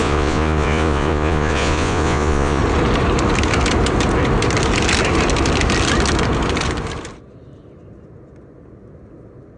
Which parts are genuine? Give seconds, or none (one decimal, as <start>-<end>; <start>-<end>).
2.6-9.6